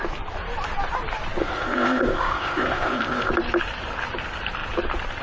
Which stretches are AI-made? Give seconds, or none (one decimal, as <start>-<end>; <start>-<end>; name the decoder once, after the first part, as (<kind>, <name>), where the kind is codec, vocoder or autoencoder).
1.4-3.3 (codec, ZipCodec)